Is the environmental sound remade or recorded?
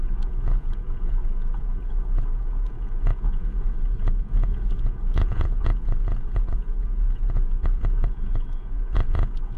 remade